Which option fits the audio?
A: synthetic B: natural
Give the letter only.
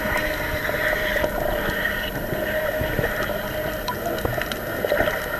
B